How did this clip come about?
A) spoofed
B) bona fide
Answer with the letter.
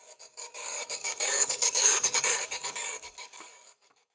A